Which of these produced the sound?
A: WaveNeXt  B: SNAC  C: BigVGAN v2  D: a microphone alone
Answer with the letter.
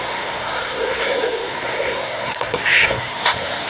B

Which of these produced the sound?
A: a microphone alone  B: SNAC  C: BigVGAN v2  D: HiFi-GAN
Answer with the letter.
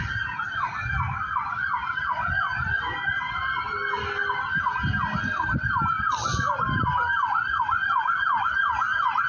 A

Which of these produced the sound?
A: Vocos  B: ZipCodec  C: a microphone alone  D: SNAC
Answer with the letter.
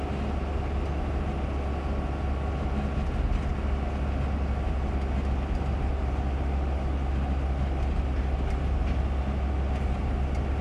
C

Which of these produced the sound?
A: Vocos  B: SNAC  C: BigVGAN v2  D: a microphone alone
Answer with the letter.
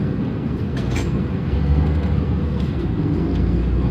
B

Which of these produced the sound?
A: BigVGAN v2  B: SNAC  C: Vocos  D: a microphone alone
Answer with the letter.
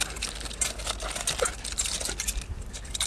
D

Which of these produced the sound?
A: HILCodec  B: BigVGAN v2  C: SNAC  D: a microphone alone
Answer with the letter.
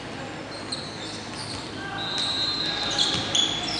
D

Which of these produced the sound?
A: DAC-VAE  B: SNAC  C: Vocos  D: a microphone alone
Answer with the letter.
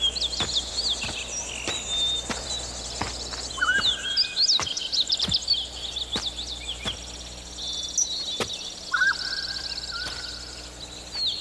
D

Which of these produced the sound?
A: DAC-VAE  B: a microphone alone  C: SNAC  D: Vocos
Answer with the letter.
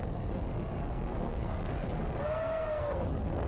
C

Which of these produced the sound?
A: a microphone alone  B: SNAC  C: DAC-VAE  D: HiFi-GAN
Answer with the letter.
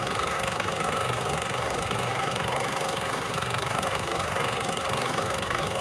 B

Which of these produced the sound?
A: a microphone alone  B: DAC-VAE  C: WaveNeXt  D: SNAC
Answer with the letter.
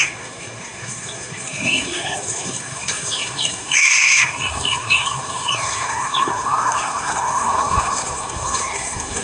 D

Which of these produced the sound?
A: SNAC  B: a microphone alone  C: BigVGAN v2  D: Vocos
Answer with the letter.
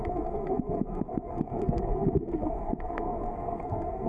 A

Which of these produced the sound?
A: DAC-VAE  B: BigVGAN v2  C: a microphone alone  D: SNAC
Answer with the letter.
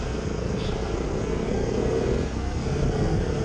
D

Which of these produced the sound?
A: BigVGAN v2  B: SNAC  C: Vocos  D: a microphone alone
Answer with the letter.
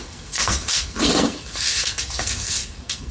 B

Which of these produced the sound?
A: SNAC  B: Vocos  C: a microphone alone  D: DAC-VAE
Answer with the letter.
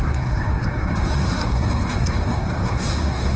A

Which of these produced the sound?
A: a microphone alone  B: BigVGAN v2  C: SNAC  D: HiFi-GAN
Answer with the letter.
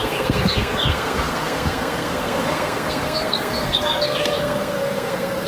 C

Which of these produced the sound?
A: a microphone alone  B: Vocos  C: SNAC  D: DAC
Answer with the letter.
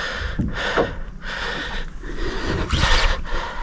A